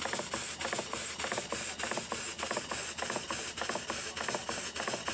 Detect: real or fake real